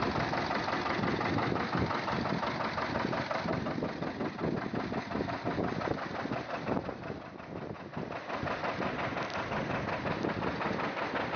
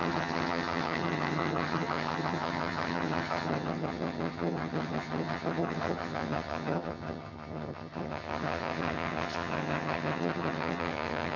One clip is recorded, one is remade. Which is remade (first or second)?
second